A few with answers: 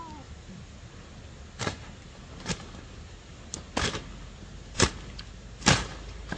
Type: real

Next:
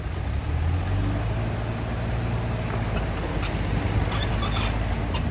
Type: real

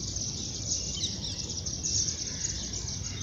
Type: real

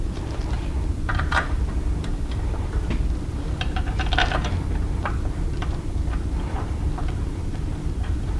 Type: fake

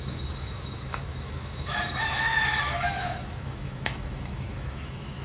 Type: fake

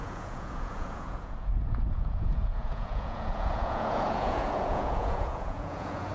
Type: fake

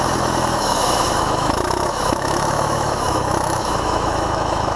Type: fake